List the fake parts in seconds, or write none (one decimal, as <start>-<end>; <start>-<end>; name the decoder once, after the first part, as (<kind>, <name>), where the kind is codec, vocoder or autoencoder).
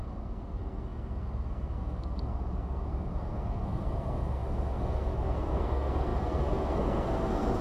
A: 0.0-7.6 (codec, SNAC)